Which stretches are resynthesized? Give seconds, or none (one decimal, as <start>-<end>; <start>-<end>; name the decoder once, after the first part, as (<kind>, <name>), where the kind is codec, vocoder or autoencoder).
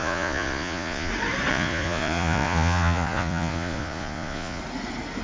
0.0-1.1 (vocoder, Vocos); 1.5-4.6